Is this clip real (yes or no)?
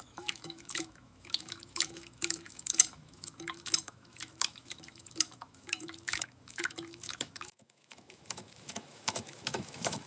no